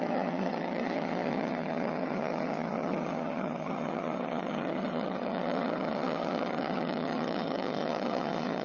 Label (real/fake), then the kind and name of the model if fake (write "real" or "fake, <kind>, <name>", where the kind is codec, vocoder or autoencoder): fake, vocoder, HiFi-GAN